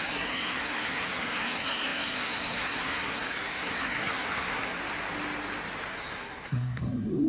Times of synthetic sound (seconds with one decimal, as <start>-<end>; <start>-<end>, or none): 0.0-4.8; 5.9-7.3